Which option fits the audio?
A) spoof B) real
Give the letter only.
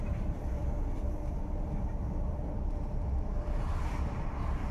B